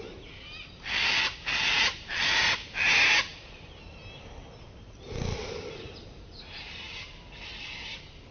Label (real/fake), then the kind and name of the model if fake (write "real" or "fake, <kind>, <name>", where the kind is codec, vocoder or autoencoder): real